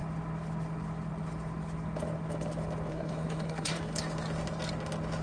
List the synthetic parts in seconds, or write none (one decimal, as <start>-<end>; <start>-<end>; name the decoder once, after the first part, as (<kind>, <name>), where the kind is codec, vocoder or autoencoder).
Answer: 2.9-3.8 (codec, SNAC)